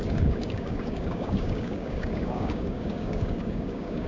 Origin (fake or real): fake